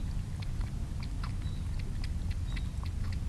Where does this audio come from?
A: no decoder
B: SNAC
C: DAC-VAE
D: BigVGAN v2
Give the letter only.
A